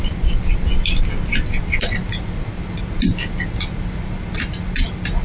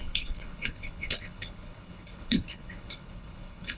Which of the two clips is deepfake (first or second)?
second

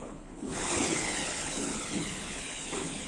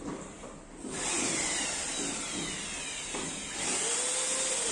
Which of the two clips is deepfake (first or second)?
first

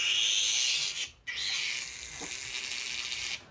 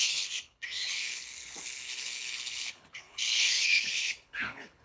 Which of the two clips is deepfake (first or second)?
second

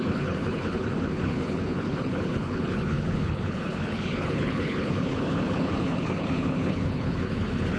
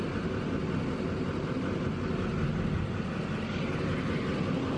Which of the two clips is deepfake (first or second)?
first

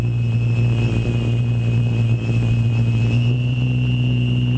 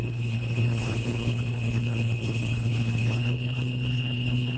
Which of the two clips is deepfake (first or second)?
second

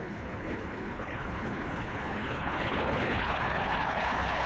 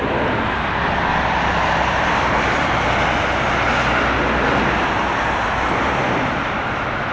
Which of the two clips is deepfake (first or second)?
first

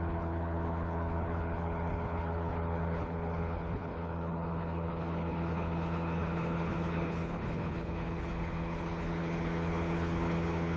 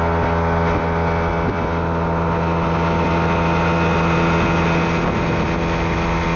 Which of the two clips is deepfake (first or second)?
first